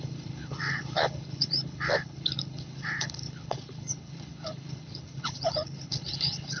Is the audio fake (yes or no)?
yes